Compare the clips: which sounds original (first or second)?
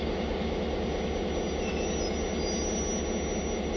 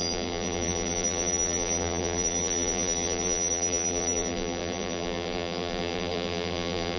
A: first